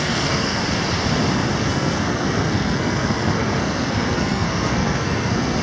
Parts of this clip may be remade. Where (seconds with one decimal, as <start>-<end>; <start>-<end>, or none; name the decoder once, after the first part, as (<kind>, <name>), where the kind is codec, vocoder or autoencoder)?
0.0-0.6 (codec, SNAC); 1.6-5.6